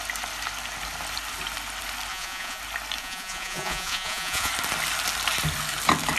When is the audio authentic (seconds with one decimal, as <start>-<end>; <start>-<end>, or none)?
0.0-2.1; 2.6-3.0; 4.5-6.2